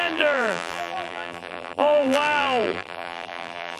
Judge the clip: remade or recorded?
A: remade